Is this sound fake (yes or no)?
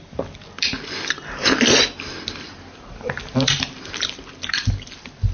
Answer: no